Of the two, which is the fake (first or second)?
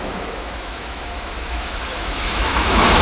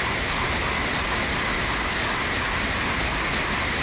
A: first